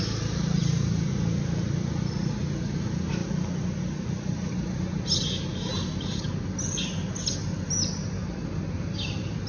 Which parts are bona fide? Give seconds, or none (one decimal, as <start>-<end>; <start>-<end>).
0.0-9.5